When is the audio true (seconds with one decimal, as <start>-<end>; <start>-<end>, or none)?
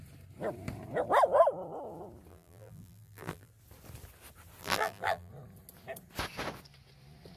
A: 0.0-2.3; 3.5-4.6; 5.3-7.4